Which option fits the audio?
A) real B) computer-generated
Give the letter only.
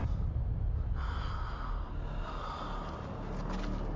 A